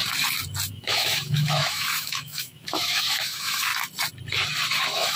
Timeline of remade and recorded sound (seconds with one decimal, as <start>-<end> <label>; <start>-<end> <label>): 0.0-0.7 recorded; 0.7-3.7 remade; 3.7-4.8 recorded; 4.8-5.2 remade